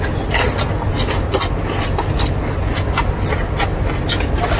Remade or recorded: recorded